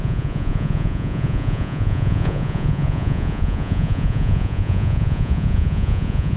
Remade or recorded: remade